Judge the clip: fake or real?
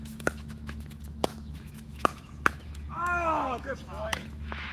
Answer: fake